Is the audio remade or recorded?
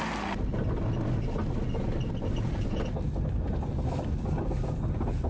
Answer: recorded